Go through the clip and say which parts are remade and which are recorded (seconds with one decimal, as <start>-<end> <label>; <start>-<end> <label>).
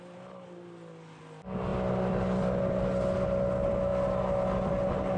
0.0-5.2 recorded